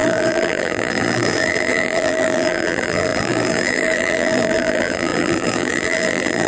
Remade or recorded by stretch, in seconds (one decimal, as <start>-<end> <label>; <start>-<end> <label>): 0.0-6.5 remade